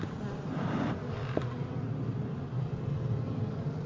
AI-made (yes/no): no